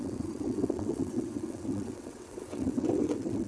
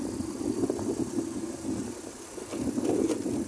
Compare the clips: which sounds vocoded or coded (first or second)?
first